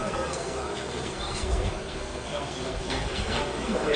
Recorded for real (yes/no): no